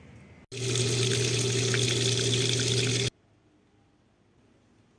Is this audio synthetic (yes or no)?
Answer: no